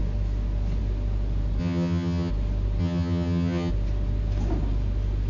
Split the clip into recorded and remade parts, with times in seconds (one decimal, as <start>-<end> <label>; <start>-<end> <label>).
0.0-1.6 recorded; 1.6-2.3 remade; 2.3-2.8 recorded; 2.8-3.7 remade; 3.7-5.3 recorded